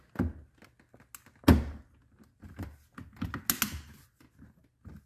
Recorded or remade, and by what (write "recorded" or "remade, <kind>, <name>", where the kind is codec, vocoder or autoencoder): recorded